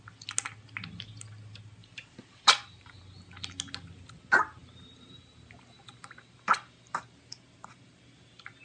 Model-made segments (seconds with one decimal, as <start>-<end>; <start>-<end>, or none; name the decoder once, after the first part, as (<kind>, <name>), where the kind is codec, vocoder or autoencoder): 1.8-3.0 (vocoder, BigVGAN v2); 4.6-8.6